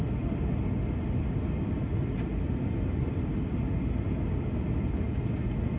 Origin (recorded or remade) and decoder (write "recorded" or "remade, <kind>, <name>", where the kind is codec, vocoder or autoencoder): recorded